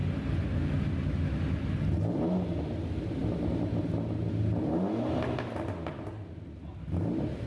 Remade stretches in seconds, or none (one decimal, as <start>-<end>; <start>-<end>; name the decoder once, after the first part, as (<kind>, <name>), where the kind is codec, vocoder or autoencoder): none